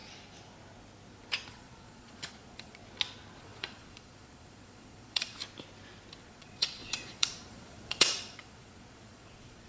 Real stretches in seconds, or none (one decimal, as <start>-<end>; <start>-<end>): 0.0-1.5; 2.8-3.4; 5.4-6.2